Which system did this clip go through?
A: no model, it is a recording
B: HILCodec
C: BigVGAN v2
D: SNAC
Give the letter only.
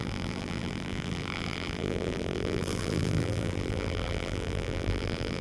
C